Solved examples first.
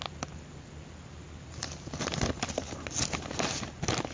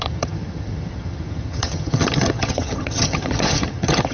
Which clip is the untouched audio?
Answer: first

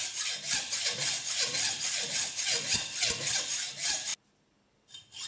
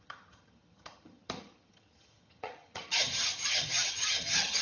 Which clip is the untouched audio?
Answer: first